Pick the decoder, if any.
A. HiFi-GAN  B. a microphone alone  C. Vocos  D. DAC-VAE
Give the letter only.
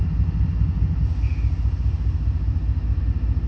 B